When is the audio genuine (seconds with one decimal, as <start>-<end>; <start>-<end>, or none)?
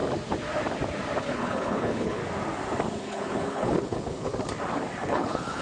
0.0-1.2; 2.2-3.0; 4.3-5.0